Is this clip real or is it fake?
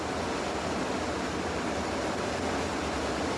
real